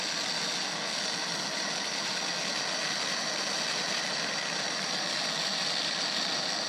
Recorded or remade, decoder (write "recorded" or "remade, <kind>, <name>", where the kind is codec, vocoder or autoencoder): recorded